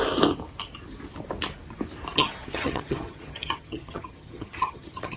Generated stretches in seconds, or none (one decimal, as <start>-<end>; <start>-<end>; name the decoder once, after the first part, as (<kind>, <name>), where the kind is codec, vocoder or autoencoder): 2.1-5.2 (vocoder, HiFi-GAN)